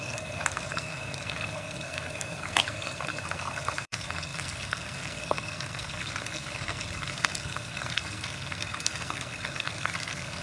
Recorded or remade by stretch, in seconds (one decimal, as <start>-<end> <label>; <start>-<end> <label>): 0.0-10.4 remade

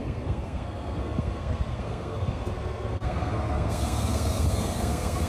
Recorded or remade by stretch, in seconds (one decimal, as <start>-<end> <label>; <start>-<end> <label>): 0.0-5.3 remade

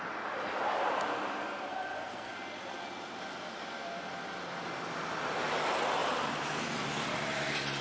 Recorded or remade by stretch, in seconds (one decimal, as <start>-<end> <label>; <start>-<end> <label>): 0.0-1.7 recorded; 1.7-2.3 remade; 2.3-7.8 recorded

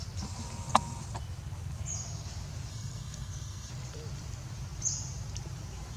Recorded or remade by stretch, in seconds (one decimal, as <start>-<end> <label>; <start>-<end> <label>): 0.0-2.7 recorded; 2.7-3.7 remade; 3.7-6.0 recorded

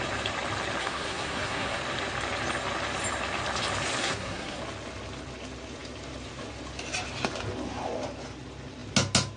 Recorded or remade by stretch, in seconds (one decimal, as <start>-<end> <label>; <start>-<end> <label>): 0.0-0.8 recorded; 0.8-1.8 remade; 1.8-4.0 recorded; 4.0-4.6 remade; 4.6-9.4 recorded

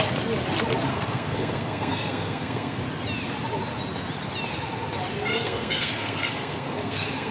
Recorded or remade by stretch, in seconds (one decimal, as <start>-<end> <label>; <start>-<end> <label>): 0.0-0.9 recorded; 0.9-2.8 remade; 2.8-5.3 recorded; 5.3-7.3 remade